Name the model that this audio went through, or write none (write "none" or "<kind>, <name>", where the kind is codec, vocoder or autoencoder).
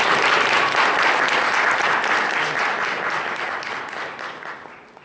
none